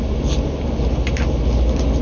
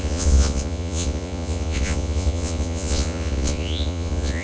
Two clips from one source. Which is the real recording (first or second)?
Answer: first